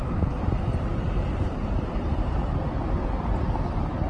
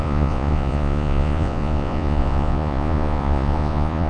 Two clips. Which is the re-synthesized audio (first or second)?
second